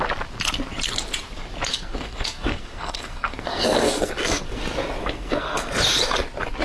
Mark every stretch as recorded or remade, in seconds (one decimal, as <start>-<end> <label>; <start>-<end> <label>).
0.0-1.7 recorded; 1.7-4.6 remade; 4.6-5.0 recorded; 5.0-5.7 remade; 5.7-6.6 recorded